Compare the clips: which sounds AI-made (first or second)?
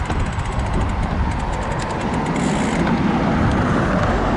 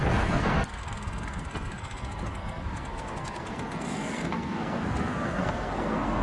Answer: second